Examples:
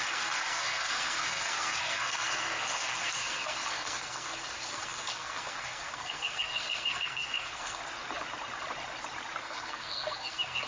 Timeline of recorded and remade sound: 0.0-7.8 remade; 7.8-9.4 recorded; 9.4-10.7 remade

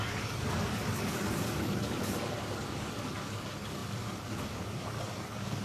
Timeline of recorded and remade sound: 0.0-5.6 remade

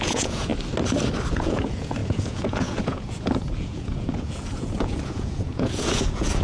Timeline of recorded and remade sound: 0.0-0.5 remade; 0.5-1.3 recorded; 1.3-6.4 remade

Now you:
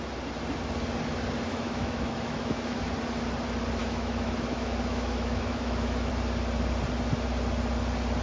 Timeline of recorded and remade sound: 0.0-1.5 recorded; 1.5-2.8 remade; 2.8-3.8 recorded; 3.8-6.1 remade; 6.1-8.2 recorded

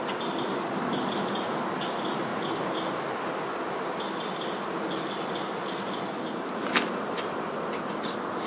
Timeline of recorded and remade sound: 0.0-8.5 recorded

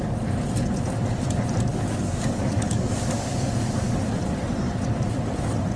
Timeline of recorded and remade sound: 0.0-1.7 recorded; 1.7-3.5 remade; 3.5-5.8 recorded

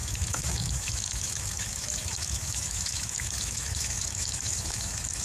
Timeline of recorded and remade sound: 0.0-5.2 remade